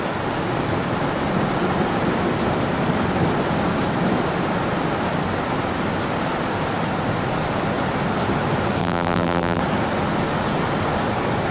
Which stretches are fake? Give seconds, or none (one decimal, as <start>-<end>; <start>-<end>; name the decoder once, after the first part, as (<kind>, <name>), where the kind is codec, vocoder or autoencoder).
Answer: 8.8-9.6 (vocoder, BigVGAN v2)